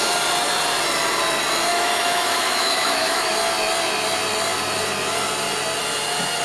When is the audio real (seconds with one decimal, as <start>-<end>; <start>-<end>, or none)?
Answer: 0.0-1.7; 3.3-6.4